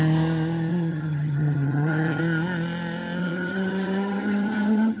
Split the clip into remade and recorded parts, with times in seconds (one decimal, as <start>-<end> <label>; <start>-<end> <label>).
0.0-0.7 recorded; 0.7-2.2 remade; 2.2-3.2 recorded; 3.2-5.0 remade